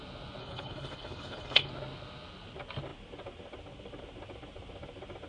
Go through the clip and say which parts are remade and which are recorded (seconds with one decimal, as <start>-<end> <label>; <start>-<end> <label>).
0.0-0.4 recorded; 0.4-1.7 remade; 1.7-5.3 recorded